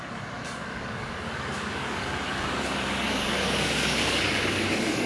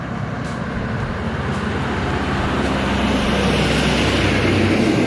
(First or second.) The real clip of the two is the second